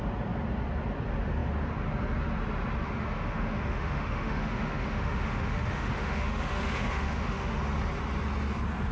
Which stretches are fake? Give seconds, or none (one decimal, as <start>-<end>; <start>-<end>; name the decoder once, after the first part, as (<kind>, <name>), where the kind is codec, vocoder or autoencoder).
2.8-7.6 (autoencoder, DAC-VAE)

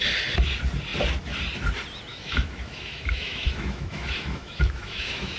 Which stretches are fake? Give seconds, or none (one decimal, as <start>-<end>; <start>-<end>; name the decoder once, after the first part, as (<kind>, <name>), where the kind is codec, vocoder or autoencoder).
2.1-5.4 (autoencoder, DAC-VAE)

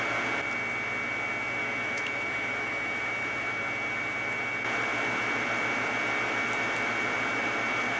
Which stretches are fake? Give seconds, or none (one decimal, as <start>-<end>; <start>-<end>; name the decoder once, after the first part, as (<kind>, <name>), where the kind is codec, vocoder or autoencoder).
1.6-3.6 (autoencoder, DAC-VAE)

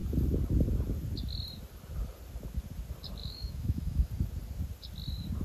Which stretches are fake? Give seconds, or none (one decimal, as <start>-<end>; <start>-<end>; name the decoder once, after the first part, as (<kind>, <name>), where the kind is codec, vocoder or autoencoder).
3.2-4.1 (autoencoder, DAC-VAE)

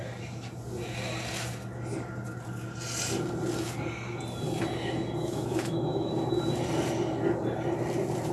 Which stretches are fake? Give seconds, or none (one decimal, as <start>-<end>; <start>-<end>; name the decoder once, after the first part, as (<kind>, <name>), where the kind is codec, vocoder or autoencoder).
5.2-6.1 (autoencoder, DAC-VAE)

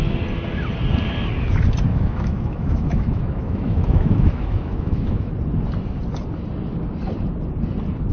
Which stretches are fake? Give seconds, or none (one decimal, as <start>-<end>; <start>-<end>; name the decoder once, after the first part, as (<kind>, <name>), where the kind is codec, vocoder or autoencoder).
1.9-5.3 (autoencoder, DAC-VAE)

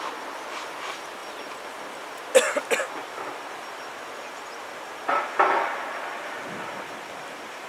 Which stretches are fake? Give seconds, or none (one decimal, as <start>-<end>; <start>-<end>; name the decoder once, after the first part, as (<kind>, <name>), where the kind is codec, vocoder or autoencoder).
none